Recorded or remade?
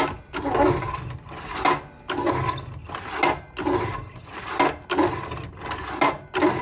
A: recorded